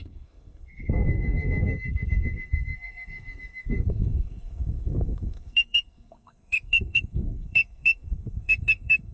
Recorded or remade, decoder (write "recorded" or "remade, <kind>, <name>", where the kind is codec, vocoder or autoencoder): remade, codec, SNAC